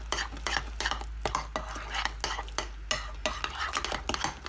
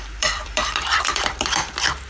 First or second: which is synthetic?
second